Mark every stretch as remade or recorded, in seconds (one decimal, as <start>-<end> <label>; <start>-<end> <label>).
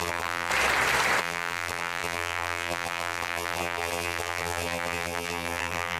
0.0-0.5 remade; 0.5-1.2 recorded; 1.2-6.0 remade